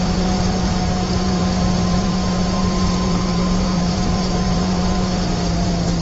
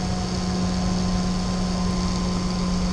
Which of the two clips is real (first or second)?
second